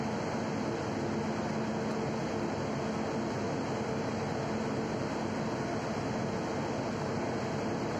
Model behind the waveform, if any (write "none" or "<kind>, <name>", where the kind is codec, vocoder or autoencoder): none